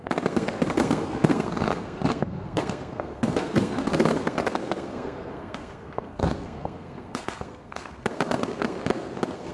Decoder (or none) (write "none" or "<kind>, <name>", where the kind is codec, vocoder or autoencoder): codec, SNAC